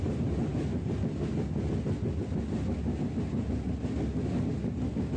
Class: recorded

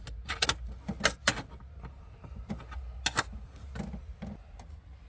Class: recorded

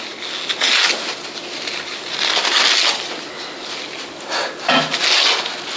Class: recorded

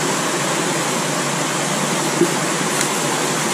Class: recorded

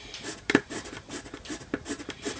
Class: recorded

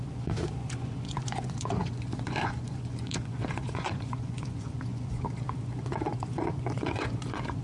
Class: remade